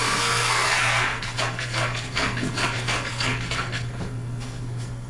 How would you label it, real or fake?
fake